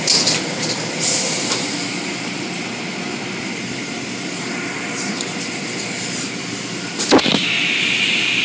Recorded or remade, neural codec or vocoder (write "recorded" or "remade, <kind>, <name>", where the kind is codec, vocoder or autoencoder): recorded